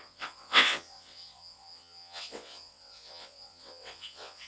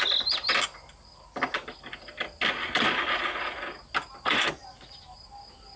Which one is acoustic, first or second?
second